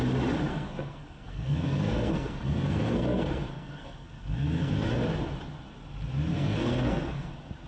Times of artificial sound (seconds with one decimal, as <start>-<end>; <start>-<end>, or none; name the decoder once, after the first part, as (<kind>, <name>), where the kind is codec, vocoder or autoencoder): 0.5-4.7 (codec, SNAC); 6.3-7.3